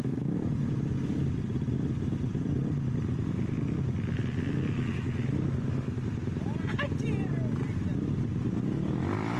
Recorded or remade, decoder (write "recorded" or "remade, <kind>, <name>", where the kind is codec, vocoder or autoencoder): recorded